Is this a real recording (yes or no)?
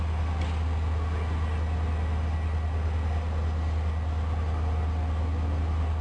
yes